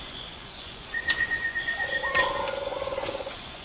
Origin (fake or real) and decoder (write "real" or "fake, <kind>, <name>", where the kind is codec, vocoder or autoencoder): fake, vocoder, Vocos